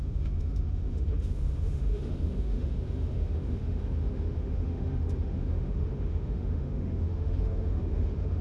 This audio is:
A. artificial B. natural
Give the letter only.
A